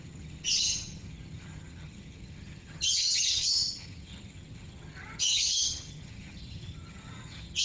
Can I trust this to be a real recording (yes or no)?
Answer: no